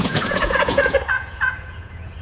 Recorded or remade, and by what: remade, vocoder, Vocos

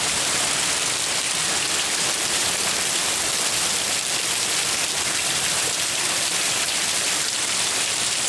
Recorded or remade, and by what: remade, vocoder, BigVGAN v2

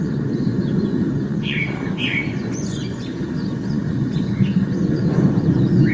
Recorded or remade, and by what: remade, vocoder, Vocos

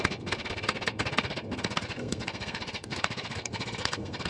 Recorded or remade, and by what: remade, codec, SNAC